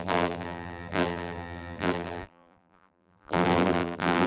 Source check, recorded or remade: remade